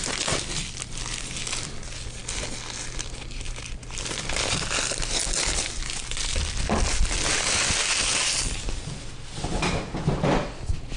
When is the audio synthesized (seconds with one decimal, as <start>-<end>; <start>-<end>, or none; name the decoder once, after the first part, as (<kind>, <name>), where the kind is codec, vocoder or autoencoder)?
none